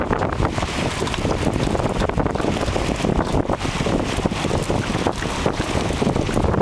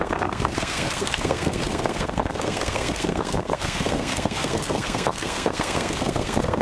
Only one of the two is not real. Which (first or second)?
second